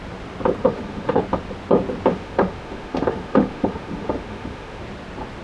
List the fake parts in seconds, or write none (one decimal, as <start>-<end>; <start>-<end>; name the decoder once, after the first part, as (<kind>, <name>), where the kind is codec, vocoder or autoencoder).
0.6-1.2 (autoencoder, DAC-VAE); 2.1-4.8